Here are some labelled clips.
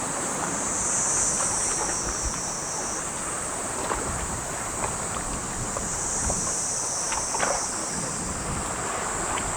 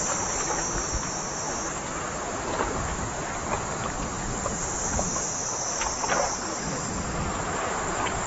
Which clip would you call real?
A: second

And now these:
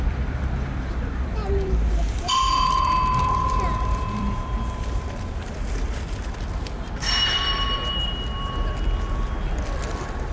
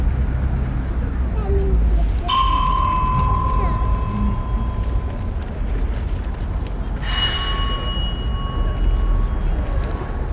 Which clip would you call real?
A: second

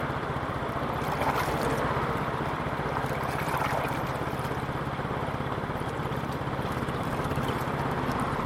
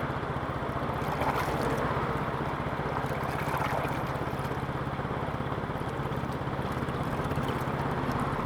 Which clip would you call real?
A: second